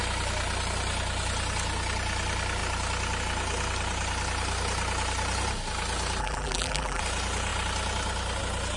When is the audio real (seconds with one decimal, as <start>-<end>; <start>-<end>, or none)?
0.0-6.2; 7.0-8.8

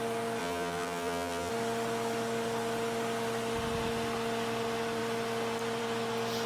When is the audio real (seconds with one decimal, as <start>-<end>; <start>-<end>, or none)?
0.0-0.4; 1.5-6.5

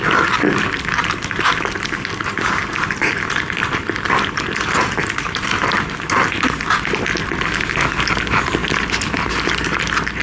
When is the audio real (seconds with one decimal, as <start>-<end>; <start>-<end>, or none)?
0.0-10.2

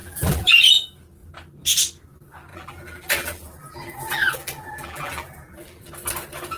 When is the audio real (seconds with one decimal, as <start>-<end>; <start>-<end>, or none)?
0.5-2.5; 5.9-6.6

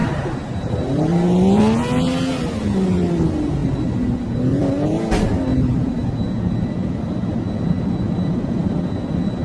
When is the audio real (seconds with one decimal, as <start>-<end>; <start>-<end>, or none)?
0.7-9.4

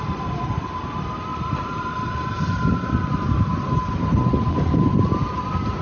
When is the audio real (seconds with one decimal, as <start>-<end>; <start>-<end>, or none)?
0.0-1.3; 1.8-5.8